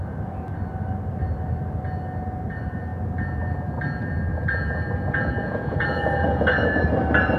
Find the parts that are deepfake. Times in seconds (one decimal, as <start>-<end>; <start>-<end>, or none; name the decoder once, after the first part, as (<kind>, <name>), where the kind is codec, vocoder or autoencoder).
4.3-6.8 (vocoder, Vocos)

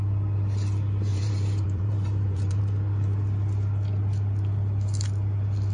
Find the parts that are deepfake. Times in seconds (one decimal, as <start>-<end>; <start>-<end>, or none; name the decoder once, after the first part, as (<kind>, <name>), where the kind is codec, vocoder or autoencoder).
1.1-2.6 (vocoder, BigVGAN v2)

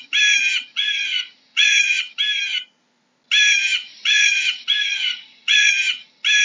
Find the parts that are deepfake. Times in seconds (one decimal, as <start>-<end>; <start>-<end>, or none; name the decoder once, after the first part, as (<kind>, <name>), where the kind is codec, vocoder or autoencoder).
0.7-2.0 (vocoder, Vocos); 3.9-5.7

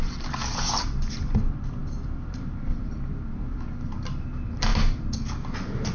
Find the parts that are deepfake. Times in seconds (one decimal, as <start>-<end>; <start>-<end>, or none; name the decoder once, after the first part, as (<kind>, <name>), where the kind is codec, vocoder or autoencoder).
0.0-4.7 (vocoder, BigVGAN v2)